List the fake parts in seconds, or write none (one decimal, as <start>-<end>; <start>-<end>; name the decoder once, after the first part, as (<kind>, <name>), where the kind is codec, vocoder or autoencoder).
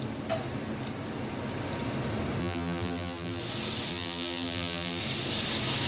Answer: 2.4-3.4 (vocoder, BigVGAN v2); 3.9-5.0